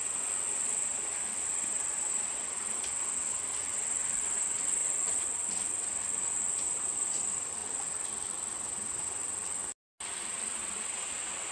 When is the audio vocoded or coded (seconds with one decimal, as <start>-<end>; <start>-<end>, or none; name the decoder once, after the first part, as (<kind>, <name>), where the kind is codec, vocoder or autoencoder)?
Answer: none